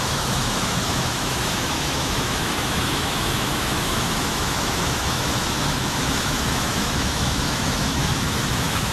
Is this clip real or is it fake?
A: fake